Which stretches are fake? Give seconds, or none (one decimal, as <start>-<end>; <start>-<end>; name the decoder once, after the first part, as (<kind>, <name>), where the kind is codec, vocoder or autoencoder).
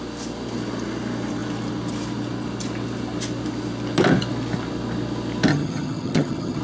5.5-6.6 (vocoder, HiFi-GAN)